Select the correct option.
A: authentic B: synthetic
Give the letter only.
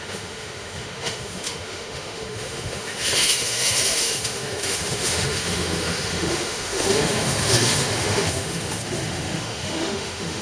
B